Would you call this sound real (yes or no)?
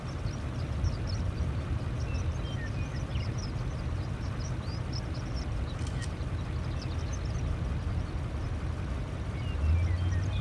yes